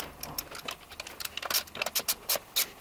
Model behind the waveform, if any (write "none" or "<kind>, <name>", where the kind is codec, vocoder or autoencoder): none